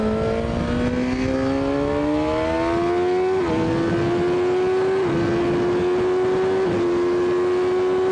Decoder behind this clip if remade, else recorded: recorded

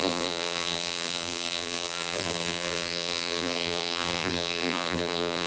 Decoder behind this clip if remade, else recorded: remade, vocoder, BigVGAN v2